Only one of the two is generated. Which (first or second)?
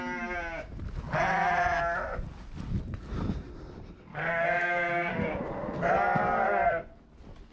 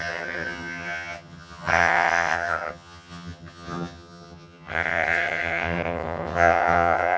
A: second